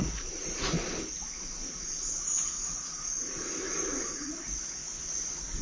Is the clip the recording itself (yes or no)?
no